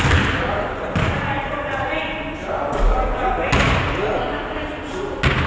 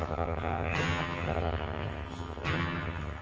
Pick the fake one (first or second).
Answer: second